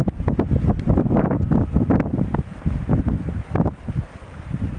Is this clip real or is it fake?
real